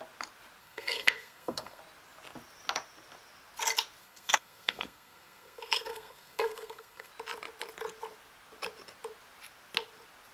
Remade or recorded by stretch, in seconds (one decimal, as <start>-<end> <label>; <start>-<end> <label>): 0.0-0.6 recorded; 0.6-1.8 remade; 1.8-4.0 recorded; 4.0-7.1 remade; 7.1-10.3 recorded